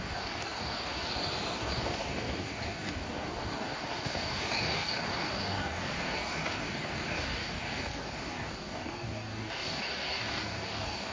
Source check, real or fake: fake